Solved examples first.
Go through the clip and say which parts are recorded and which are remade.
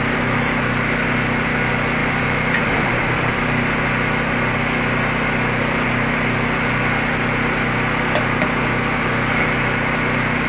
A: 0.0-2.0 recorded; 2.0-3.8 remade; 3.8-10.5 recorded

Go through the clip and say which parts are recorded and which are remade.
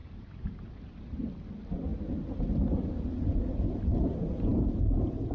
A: 0.0-1.2 remade; 1.2-4.5 recorded; 4.5-5.3 remade